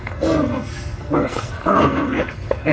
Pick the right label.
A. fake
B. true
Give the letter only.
A